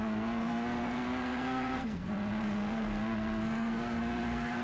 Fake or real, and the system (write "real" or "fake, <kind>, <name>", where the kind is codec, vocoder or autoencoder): fake, codec, SNAC